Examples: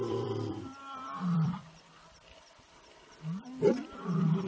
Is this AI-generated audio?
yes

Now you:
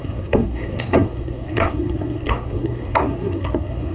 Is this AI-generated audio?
yes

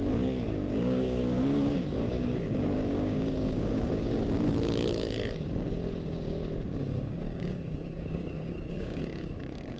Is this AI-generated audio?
yes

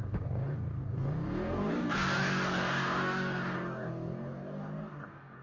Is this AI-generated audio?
yes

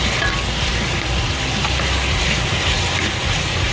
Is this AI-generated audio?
no